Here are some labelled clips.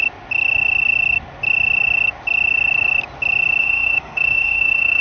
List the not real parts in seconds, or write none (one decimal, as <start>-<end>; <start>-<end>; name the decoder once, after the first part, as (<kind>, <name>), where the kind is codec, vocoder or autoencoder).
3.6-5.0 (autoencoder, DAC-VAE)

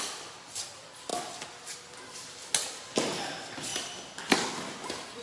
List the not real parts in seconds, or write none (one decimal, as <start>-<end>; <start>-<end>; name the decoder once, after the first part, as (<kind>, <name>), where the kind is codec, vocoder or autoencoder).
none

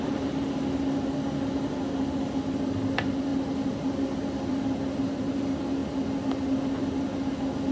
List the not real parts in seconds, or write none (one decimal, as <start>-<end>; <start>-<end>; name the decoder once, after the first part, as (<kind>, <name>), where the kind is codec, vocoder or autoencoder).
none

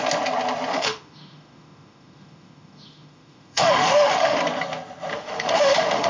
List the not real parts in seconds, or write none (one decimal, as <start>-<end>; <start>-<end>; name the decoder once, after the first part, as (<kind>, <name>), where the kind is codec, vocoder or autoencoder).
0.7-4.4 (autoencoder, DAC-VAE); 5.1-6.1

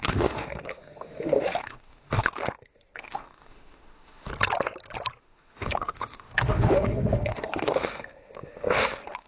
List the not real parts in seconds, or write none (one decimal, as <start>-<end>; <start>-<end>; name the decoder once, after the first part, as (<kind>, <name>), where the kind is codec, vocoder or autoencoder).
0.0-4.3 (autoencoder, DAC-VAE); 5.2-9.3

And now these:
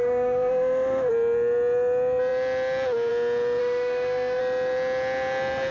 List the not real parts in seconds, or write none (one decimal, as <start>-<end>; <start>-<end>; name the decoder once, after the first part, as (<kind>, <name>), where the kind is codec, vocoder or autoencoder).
0.0-1.1 (autoencoder, DAC-VAE); 3.6-4.4